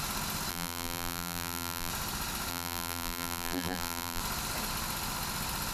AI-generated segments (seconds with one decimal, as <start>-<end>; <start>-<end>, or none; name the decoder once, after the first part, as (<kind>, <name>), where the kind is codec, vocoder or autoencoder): 0.5-1.9 (vocoder, BigVGAN v2); 2.5-4.2